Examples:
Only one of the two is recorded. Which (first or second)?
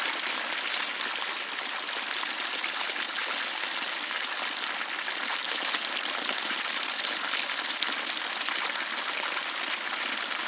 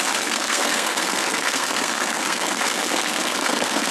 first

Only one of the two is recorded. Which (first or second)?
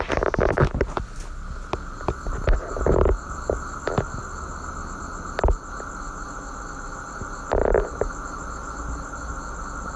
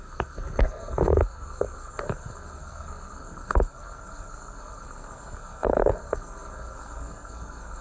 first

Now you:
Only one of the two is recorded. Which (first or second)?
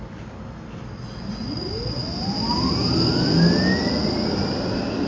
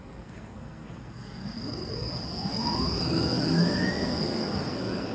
first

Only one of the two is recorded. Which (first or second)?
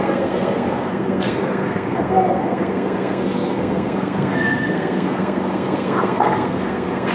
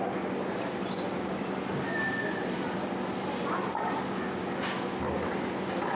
second